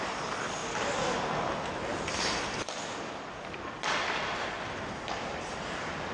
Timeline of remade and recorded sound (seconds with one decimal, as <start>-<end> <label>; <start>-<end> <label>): 0.0-0.6 recorded; 0.6-1.5 remade; 1.5-6.1 recorded